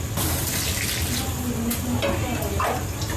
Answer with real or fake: real